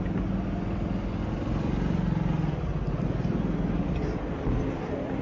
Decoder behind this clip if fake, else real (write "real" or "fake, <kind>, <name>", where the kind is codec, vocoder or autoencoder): real